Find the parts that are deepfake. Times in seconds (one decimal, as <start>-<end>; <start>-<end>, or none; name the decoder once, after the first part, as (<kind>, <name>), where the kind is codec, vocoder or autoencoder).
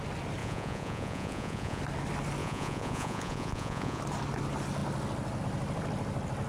0.4-1.8 (vocoder, Vocos); 2.4-4.0